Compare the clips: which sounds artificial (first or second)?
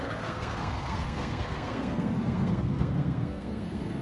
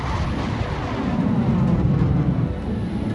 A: first